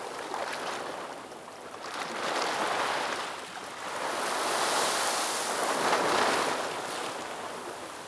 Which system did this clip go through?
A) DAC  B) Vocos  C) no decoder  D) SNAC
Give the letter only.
C